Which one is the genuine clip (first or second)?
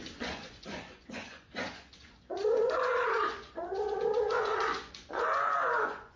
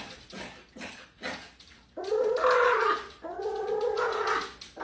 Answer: second